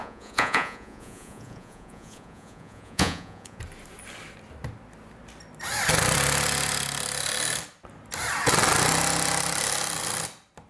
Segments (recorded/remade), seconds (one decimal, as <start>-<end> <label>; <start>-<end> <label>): 0.0-3.6 remade; 3.6-10.7 recorded